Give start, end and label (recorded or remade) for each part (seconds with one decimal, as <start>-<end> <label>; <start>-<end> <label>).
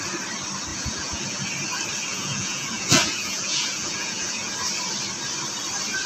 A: 0.0-0.7 recorded; 0.7-1.4 remade; 1.4-2.1 recorded; 2.1-4.5 remade; 4.5-6.1 recorded